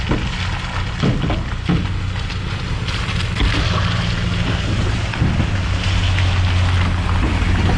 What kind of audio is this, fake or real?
real